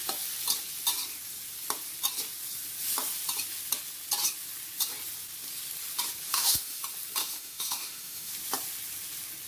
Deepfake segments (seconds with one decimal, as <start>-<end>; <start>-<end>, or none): 6.3-6.8; 7.2-8.3